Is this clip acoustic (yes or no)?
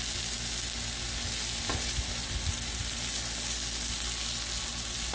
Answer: yes